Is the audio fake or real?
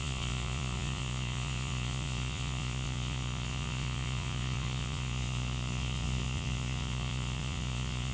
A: fake